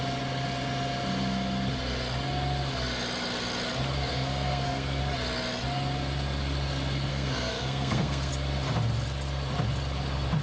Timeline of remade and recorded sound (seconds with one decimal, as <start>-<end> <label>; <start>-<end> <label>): 0.0-4.1 recorded; 4.1-5.0 remade; 5.0-7.1 recorded; 7.1-8.3 remade; 8.3-10.4 recorded